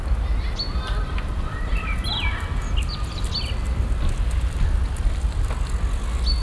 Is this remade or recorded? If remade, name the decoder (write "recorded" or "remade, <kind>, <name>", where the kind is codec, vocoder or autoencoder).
recorded